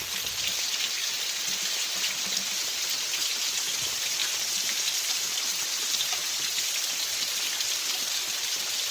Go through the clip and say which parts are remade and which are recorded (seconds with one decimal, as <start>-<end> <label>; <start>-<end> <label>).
0.0-8.9 recorded